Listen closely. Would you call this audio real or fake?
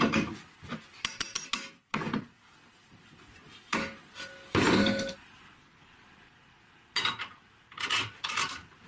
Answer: real